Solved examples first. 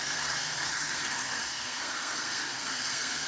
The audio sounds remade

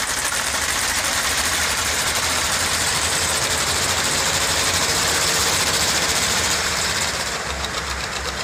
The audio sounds remade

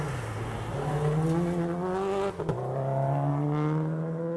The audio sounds recorded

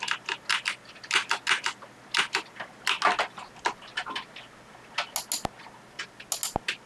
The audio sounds recorded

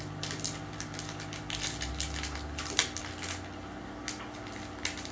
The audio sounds recorded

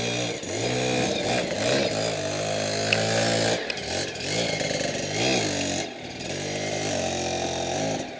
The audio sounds recorded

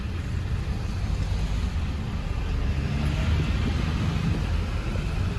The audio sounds recorded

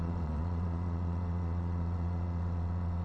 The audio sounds remade